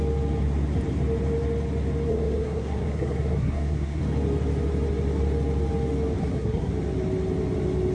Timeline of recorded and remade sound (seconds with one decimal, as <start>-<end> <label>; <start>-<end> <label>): 0.0-2.1 recorded; 2.1-4.0 remade; 4.0-6.2 recorded; 6.2-6.7 remade; 6.7-7.9 recorded